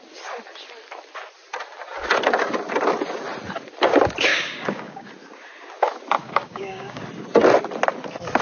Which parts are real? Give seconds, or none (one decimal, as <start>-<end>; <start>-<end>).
0.0-4.3; 5.1-6.2; 7.0-8.4